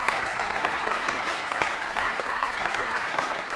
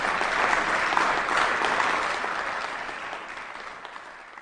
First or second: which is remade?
first